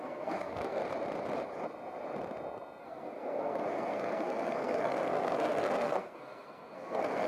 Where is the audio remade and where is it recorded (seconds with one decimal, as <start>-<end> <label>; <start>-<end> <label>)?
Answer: 0.0-0.8 remade; 0.8-2.8 recorded; 2.8-7.3 remade